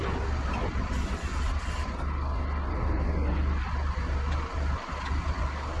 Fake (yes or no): no